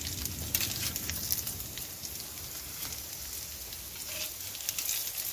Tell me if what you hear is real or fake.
real